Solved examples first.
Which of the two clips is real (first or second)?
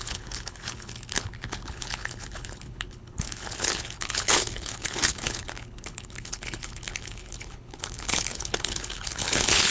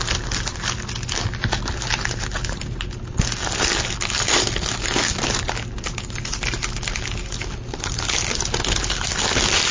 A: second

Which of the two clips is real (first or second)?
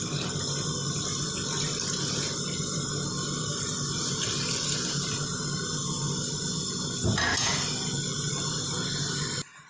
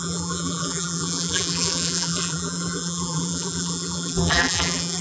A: first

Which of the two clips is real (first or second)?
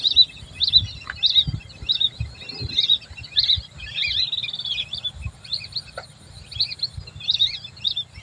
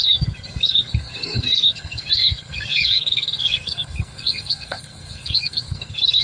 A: first